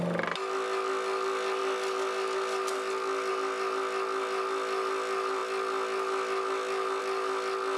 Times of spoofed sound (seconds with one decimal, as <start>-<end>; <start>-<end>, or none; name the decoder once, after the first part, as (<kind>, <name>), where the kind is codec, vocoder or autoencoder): none